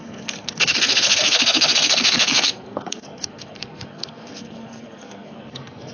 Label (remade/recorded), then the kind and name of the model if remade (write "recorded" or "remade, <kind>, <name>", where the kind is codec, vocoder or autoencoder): remade, codec, SNAC